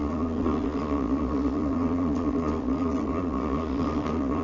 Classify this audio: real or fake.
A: fake